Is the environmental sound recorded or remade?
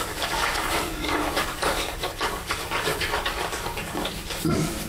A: remade